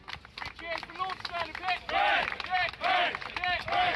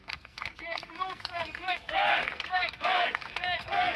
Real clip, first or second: first